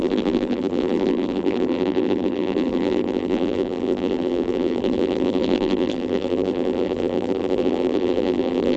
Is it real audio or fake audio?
fake